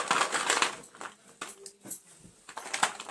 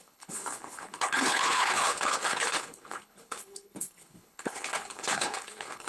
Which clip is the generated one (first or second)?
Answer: second